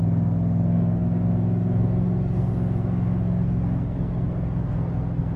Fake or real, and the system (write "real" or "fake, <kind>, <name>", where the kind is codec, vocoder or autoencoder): fake, codec, SNAC